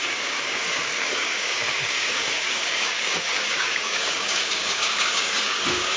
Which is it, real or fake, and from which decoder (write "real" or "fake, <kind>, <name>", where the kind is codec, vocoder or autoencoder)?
fake, codec, DAC